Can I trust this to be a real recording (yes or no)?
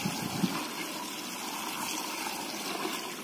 yes